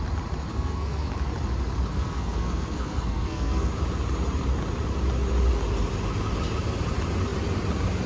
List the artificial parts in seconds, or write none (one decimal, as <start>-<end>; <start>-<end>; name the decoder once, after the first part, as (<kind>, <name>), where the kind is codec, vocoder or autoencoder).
0.5-1.1 (codec, SNAC); 1.9-3.7